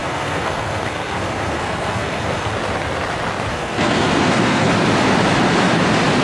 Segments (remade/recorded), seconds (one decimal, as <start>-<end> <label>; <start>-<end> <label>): 0.0-2.5 remade; 2.5-3.5 recorded; 3.5-4.7 remade; 4.7-6.2 recorded